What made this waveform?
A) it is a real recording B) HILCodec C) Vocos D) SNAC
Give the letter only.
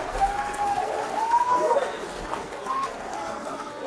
D